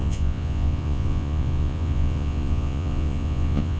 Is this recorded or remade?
remade